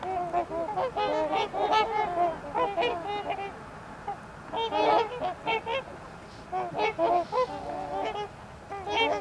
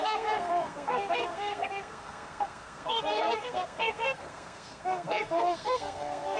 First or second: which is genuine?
first